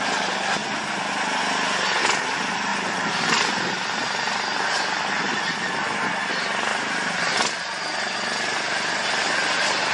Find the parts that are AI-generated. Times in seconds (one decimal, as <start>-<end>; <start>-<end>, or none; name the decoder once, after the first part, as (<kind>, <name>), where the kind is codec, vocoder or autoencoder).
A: 2.7-5.4 (vocoder, BigVGAN v2); 6.7-9.1